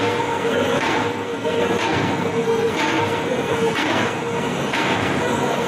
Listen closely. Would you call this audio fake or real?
fake